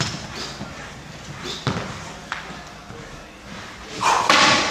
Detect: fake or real real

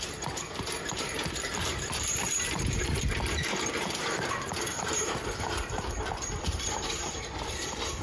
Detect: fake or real fake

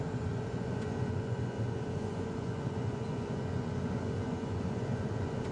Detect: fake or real fake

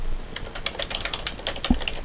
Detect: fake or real real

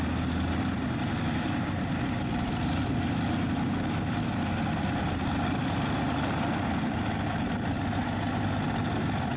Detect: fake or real real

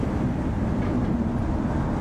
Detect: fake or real real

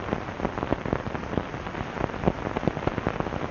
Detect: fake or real real